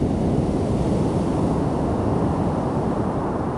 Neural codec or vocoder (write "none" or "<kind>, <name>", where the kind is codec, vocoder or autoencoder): none